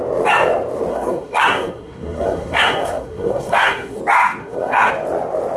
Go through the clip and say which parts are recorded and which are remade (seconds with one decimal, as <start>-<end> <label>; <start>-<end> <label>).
0.0-0.9 recorded; 0.9-4.0 remade; 4.0-4.4 recorded; 4.4-4.9 remade; 4.9-5.6 recorded